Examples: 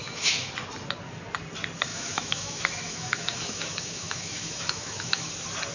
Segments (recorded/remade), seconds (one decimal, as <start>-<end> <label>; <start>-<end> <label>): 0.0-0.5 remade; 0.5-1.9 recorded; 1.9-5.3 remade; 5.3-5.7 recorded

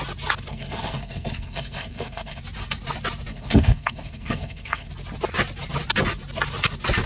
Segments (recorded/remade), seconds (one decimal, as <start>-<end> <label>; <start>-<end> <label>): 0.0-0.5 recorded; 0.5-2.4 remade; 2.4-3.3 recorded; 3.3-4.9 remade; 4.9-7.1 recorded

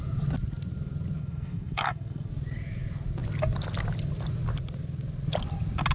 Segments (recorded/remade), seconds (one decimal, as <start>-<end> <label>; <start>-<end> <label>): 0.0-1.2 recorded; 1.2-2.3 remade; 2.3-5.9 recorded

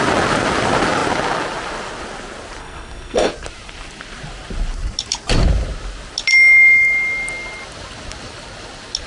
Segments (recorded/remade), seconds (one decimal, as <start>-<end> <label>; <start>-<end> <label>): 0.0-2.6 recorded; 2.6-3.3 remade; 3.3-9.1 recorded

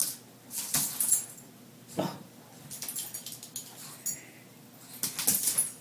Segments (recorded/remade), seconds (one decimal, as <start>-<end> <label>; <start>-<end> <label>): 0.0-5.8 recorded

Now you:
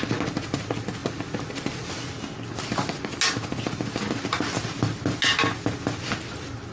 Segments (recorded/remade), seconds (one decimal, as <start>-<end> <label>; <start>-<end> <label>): 0.0-6.7 recorded